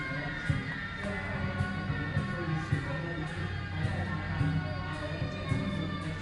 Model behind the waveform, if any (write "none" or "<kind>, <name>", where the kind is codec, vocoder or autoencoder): none